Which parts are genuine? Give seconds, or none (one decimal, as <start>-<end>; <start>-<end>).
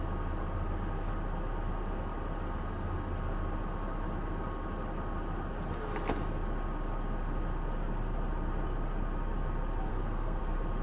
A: 0.0-9.9; 10.4-10.8